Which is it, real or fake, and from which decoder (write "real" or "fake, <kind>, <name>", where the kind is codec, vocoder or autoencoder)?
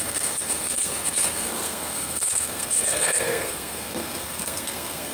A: fake, codec, SNAC